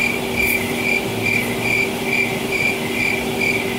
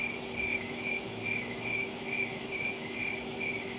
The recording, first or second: first